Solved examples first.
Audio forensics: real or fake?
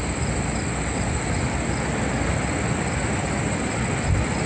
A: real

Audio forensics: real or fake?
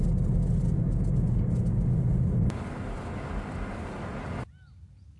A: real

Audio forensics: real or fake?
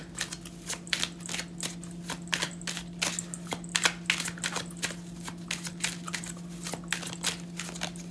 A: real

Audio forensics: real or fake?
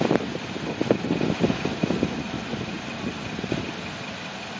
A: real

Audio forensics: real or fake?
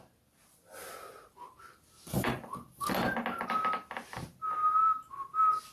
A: real